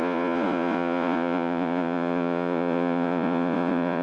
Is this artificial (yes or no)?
yes